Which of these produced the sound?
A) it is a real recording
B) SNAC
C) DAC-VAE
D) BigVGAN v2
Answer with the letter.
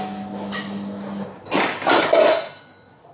A